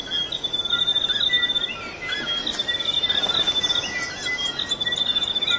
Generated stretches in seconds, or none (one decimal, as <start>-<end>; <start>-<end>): none